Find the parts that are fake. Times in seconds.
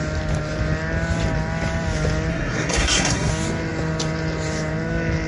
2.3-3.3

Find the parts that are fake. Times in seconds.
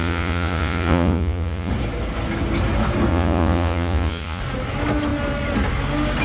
0.0-1.7; 3.1-4.4